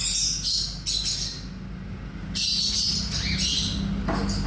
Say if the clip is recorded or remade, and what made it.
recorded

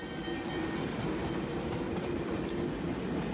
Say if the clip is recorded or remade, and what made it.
recorded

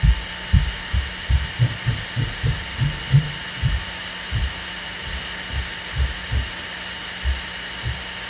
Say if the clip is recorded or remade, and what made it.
recorded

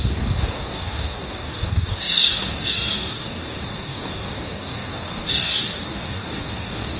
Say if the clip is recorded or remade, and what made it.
remade, codec, DAC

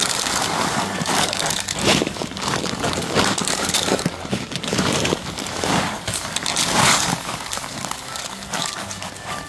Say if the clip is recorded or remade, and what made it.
remade, codec, DAC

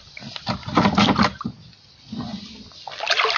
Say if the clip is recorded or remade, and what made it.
recorded